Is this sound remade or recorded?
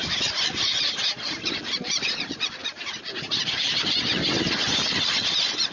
recorded